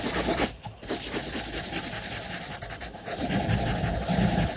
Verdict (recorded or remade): recorded